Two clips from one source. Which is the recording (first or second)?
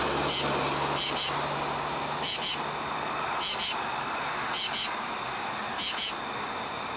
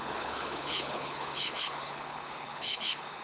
first